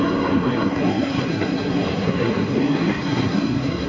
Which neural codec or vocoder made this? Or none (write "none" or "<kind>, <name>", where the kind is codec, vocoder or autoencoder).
codec, SNAC